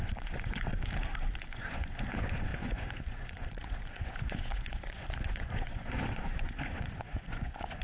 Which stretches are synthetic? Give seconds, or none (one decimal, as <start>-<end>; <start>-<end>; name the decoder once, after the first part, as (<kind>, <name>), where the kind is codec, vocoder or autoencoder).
0.0-0.7 (vocoder, Vocos); 1.4-7.8